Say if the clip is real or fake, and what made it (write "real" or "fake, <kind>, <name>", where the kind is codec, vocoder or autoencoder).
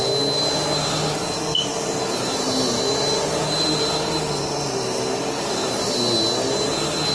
real